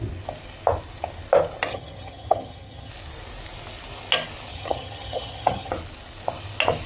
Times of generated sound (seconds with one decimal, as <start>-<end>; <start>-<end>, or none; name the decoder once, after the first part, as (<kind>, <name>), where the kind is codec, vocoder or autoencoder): 1.7-2.9 (vocoder, HiFi-GAN); 4.5-5.7